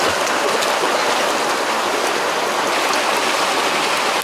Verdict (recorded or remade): recorded